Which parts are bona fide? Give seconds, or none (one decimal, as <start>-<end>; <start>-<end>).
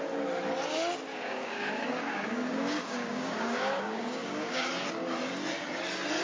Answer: 0.0-1.1; 4.7-6.2